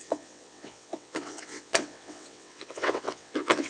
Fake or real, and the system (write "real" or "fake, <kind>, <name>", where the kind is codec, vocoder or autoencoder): fake, vocoder, WaveNeXt